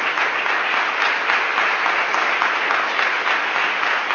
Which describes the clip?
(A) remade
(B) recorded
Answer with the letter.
B